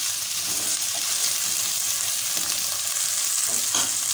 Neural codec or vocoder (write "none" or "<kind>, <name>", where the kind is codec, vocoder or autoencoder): none